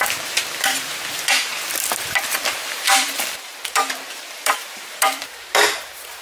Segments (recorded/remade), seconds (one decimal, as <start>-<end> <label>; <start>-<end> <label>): 0.0-1.5 remade; 1.5-2.5 recorded; 2.5-6.2 remade

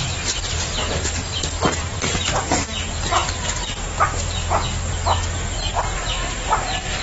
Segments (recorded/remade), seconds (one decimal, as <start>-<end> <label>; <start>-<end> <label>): 0.0-7.0 recorded